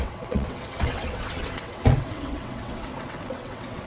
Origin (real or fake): fake